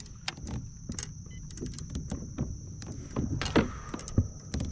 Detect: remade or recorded recorded